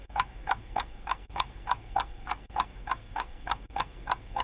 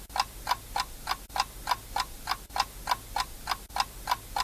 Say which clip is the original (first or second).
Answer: second